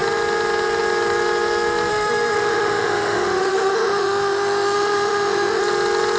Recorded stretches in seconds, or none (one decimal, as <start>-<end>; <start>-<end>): 0.0-1.9; 5.6-6.2